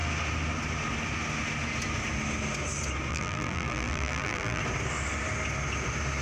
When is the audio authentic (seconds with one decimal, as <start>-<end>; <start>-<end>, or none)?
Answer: 0.0-3.1; 4.6-6.2